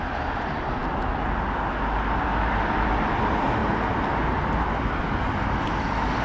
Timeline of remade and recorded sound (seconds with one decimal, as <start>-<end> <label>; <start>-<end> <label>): 0.0-6.2 recorded

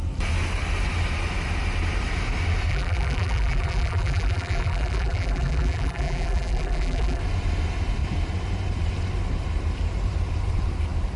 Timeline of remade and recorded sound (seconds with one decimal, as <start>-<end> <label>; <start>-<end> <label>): 0.0-2.7 recorded; 2.7-7.2 remade; 7.2-11.2 recorded

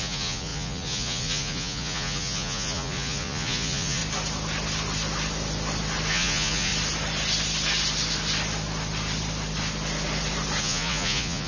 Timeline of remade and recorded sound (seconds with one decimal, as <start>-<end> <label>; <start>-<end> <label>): 0.0-4.0 remade; 4.0-6.1 recorded; 6.1-6.7 remade; 6.7-10.6 recorded; 10.6-11.5 remade